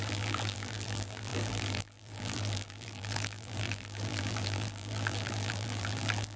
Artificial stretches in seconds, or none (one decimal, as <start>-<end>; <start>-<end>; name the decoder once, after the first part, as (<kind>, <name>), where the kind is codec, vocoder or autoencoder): 0.0-6.4 (vocoder, BigVGAN v2)